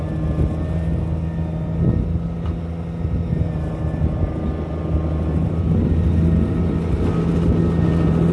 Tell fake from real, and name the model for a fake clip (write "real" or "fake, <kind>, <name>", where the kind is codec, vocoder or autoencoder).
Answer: real